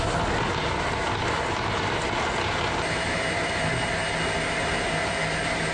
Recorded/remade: recorded